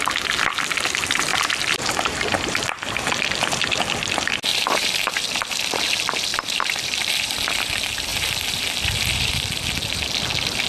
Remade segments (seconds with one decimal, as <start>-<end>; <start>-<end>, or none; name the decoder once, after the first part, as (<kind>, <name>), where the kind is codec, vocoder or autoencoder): 1.3-3.0 (vocoder, BigVGAN v2); 4.5-5.7; 6.3-7.1; 8.1-9.3